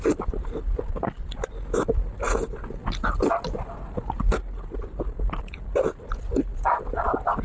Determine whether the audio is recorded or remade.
recorded